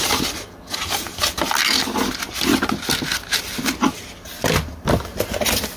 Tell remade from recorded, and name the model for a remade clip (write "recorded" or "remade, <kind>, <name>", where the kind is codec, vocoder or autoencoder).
recorded